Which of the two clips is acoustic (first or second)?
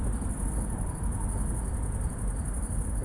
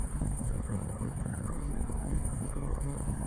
first